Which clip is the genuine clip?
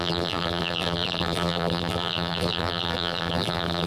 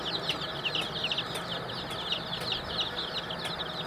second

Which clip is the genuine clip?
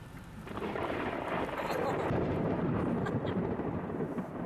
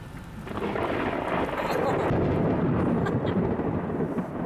second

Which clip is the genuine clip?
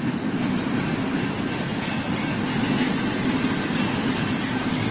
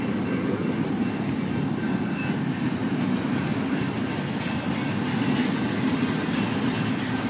second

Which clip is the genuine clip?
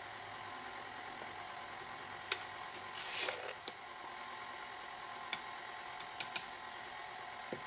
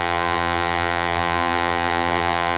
first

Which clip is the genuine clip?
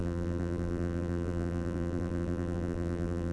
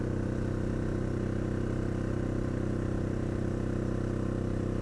second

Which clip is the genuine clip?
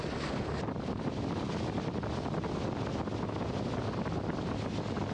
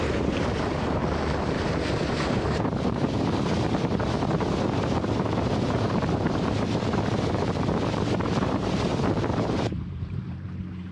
first